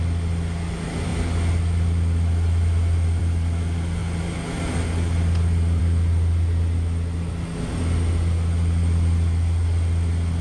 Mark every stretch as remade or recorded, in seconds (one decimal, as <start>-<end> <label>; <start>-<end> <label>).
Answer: 0.0-10.4 recorded